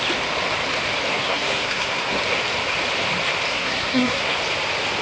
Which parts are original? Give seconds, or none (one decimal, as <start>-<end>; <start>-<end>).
0.0-1.1; 2.2-3.5; 4.4-5.0